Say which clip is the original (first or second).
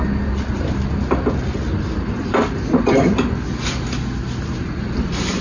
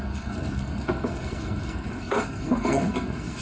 first